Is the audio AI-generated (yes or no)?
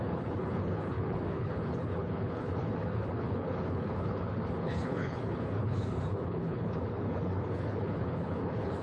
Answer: yes